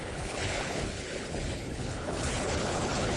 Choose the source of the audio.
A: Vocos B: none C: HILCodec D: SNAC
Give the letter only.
C